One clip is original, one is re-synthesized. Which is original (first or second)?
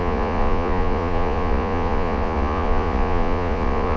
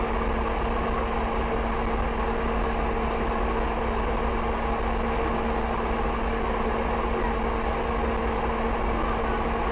second